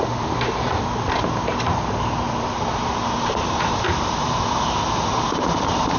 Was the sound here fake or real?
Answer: fake